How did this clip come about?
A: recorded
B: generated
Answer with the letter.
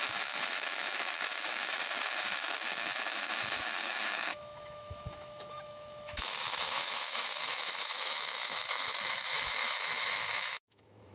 B